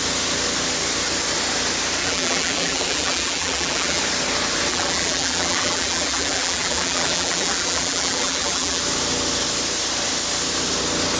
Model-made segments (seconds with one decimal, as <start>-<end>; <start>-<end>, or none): 2.0-4.0; 4.7-8.8